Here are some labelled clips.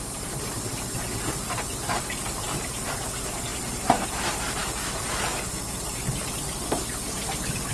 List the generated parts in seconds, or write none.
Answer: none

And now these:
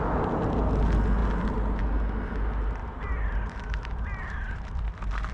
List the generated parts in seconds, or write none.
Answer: 2.8-5.3 (vocoder, BigVGAN v2)

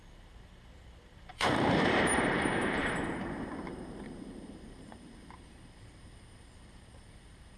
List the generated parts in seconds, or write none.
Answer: 0.0-7.6 (vocoder, BigVGAN v2)

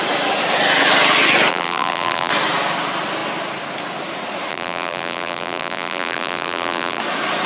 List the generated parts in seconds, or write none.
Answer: 1.5-2.3 (vocoder, BigVGAN v2); 4.5-7.0

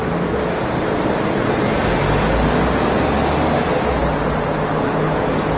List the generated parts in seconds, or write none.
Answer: 0.0-1.8 (vocoder, BigVGAN v2)